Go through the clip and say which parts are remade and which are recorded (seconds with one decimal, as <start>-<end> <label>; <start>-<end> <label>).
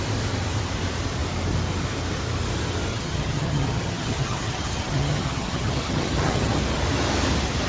0.0-2.9 recorded; 2.9-6.6 remade; 6.6-7.7 recorded